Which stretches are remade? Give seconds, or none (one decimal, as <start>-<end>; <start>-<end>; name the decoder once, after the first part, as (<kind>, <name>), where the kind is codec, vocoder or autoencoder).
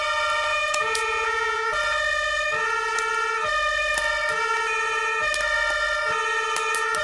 0.5-1.8 (vocoder, Vocos)